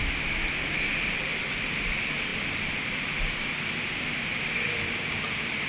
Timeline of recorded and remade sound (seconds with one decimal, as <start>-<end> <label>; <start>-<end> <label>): 0.0-0.6 recorded; 0.6-1.3 remade; 1.3-1.8 recorded; 1.8-5.7 remade